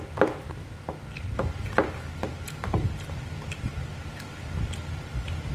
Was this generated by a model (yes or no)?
no